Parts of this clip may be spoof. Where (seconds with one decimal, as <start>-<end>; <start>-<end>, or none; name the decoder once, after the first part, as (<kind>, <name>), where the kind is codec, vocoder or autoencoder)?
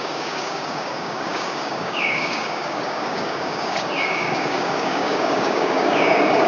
0.0-6.5 (codec, DAC)